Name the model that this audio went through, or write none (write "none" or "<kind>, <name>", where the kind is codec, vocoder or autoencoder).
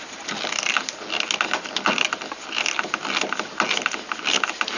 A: none